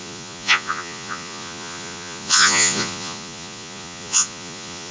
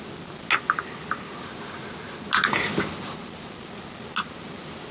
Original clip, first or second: second